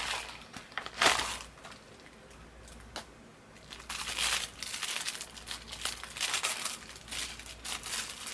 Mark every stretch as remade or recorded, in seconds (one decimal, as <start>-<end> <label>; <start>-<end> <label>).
0.0-8.3 recorded